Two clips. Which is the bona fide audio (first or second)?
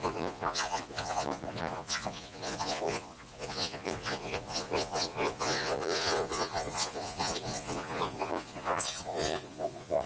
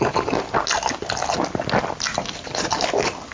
second